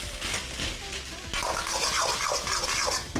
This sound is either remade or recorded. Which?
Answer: recorded